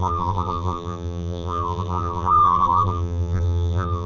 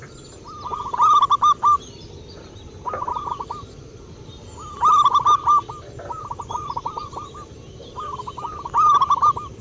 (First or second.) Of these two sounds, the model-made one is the first